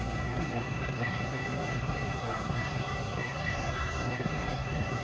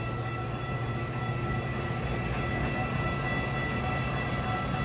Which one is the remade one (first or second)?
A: first